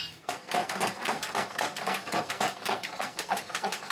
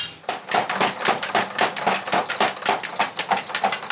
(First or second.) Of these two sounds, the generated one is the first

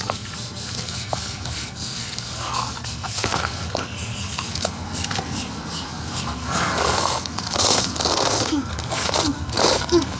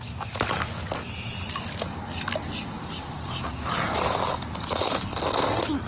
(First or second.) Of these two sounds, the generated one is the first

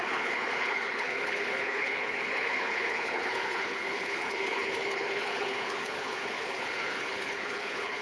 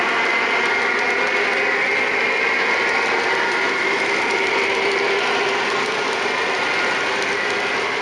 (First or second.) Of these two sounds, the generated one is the first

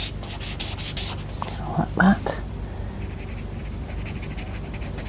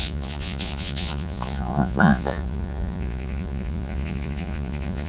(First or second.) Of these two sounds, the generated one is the second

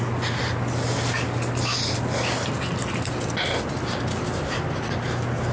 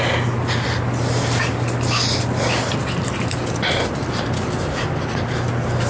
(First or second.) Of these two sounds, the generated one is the second